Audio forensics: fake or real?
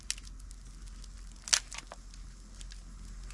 real